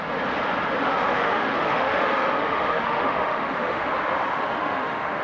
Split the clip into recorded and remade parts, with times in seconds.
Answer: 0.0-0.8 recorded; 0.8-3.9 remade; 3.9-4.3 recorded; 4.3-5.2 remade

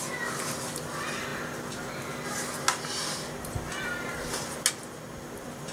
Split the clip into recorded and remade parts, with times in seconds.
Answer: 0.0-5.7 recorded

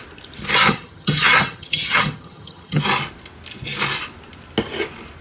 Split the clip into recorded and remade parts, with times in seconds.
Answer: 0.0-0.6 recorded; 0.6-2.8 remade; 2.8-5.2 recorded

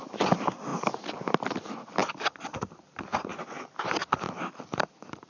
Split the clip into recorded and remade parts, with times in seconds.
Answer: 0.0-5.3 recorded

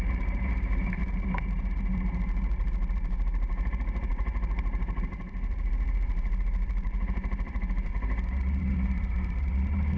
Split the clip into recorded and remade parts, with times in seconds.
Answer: 0.0-7.9 remade; 7.9-8.6 recorded; 8.6-10.0 remade

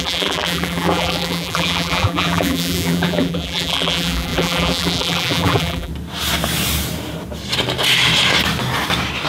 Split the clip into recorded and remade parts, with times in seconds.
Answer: 0.0-5.9 remade; 5.9-9.3 recorded

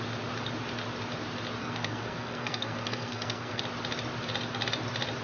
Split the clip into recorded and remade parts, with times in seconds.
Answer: 0.0-1.6 recorded; 1.6-3.6 remade; 3.6-5.2 recorded